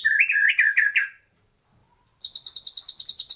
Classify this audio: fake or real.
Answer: fake